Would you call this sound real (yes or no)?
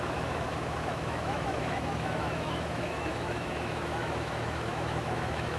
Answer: no